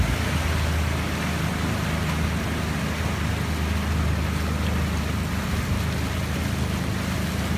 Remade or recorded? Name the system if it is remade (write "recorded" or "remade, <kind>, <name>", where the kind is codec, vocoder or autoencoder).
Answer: recorded